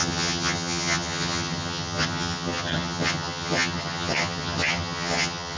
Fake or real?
fake